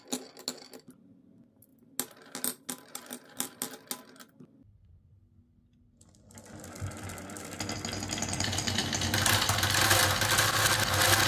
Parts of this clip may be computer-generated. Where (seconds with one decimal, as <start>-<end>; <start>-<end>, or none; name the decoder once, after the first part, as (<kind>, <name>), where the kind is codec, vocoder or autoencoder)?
none